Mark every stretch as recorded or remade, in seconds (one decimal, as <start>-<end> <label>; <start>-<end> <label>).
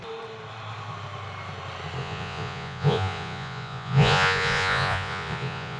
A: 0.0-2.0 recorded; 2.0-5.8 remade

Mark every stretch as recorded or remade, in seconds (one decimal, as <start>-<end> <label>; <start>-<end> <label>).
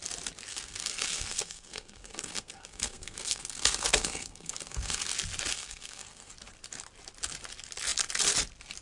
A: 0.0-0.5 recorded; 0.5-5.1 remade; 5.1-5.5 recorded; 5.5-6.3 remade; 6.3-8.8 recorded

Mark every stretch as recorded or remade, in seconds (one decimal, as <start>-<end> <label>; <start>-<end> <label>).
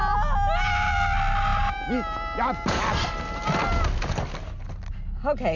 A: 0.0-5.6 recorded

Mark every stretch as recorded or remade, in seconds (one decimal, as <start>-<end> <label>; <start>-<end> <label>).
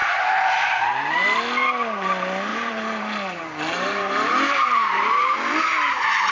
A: 0.0-0.8 remade; 0.8-2.5 recorded; 2.5-6.3 remade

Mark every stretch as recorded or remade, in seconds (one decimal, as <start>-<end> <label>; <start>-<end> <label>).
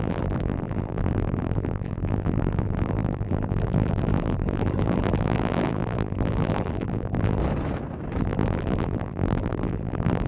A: 0.0-7.4 remade; 7.4-8.2 recorded; 8.2-10.3 remade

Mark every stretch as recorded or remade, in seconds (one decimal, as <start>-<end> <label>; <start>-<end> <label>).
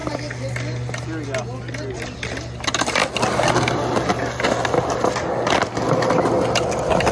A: 0.0-7.1 recorded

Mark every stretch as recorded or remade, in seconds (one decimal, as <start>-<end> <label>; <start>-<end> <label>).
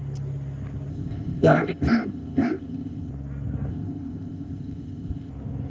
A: 0.0-0.9 recorded; 0.9-3.1 remade; 3.1-3.7 recorded; 3.7-5.3 remade; 5.3-5.7 recorded